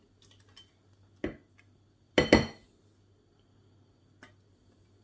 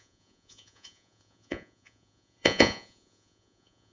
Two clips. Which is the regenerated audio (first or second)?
second